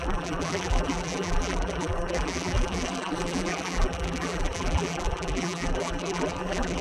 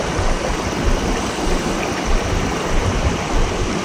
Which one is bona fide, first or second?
second